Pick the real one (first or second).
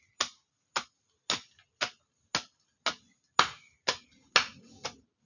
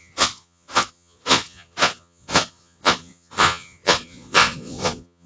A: first